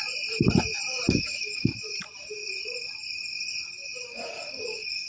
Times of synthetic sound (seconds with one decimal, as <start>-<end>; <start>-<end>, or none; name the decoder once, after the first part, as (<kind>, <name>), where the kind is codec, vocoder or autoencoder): 1.1-1.7 (codec, DAC); 4.1-5.1